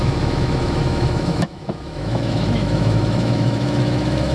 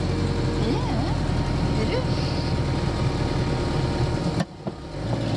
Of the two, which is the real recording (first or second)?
second